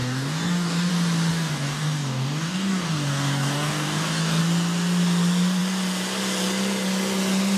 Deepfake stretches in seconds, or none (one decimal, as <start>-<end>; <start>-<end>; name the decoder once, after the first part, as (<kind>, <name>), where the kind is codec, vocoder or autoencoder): 0.0-0.9 (codec, DAC); 1.3-4.4